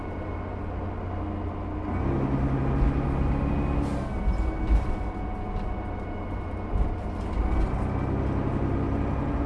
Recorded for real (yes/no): yes